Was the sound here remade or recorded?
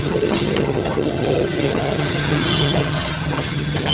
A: remade